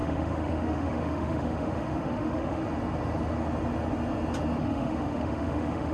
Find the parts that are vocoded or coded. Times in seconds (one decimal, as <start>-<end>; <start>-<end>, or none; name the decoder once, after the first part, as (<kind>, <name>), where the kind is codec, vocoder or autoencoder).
0.0-2.6 (autoencoder, DAC-VAE); 4.6-5.9